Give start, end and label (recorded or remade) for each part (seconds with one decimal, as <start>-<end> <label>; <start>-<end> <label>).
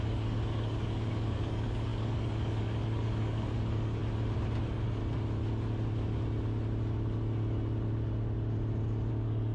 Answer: 0.0-4.0 remade; 4.0-4.6 recorded; 4.6-5.0 remade; 5.0-9.1 recorded; 9.1-9.5 remade